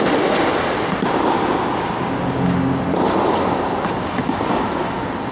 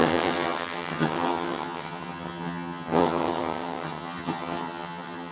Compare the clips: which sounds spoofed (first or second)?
second